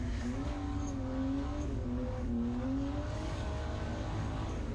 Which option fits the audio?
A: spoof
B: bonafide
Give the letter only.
A